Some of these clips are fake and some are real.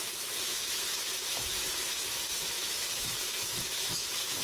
fake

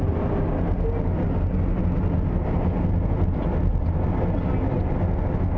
real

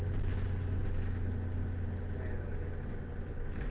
real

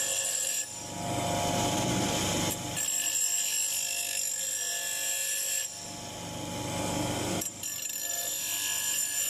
real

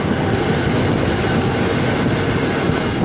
real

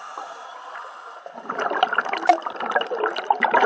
real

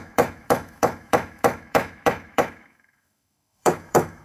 fake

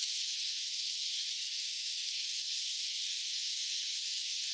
fake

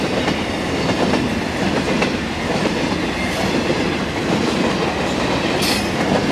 real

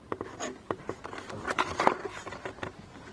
real